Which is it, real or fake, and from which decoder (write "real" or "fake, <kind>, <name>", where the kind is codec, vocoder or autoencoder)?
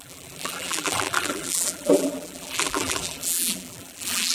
fake, vocoder, BigVGAN v2